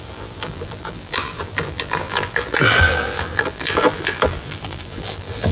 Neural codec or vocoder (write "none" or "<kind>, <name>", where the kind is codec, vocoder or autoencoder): vocoder, BigVGAN v2